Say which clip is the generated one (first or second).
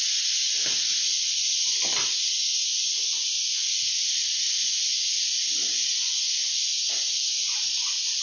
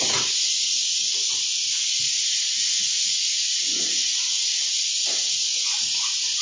second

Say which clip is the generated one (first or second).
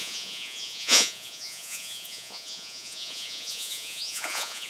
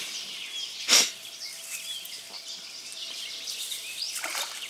first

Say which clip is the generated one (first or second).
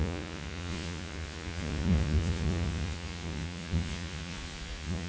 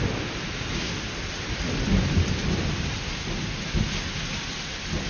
first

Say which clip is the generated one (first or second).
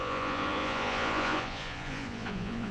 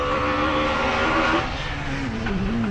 first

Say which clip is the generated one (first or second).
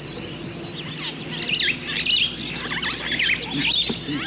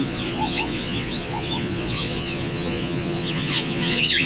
second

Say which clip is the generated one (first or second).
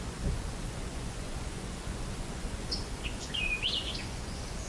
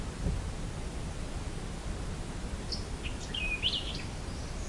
first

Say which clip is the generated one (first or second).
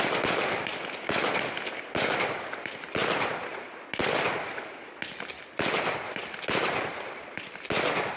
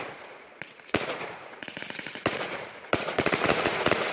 second